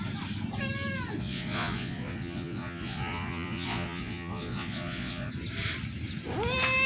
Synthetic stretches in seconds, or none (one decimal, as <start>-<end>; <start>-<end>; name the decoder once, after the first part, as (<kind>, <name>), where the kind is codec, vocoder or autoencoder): 1.2-5.3 (vocoder, Vocos)